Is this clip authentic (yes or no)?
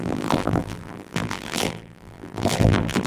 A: no